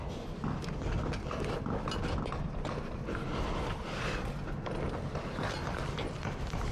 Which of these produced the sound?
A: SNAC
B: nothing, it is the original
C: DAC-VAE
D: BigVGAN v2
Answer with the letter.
B